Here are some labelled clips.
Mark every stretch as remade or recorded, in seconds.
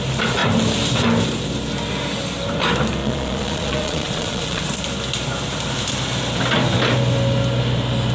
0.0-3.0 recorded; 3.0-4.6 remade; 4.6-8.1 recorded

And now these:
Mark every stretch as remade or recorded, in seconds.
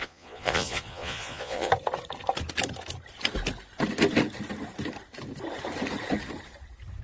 0.0-1.7 remade; 1.7-7.0 recorded